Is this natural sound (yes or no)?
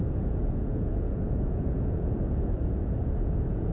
no